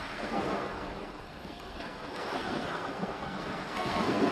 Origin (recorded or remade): remade